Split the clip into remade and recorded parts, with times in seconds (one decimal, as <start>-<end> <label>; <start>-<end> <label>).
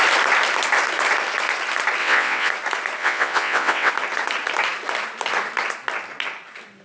0.0-2.0 recorded; 2.0-2.5 remade; 2.5-3.0 recorded; 3.0-3.9 remade; 3.9-6.8 recorded